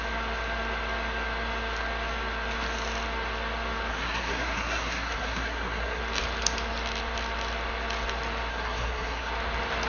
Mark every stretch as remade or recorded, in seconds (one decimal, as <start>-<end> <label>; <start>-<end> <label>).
0.0-3.9 recorded; 3.9-6.0 remade; 6.0-8.5 recorded; 8.5-9.3 remade; 9.3-9.9 recorded